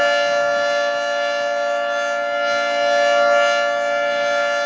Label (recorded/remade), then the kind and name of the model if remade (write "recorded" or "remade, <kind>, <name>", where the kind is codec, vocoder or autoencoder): recorded